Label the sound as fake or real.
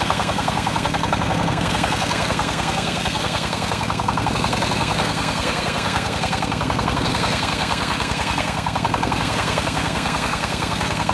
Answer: fake